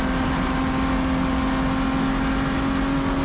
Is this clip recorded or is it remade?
recorded